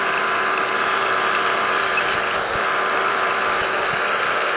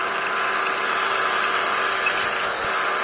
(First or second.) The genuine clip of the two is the second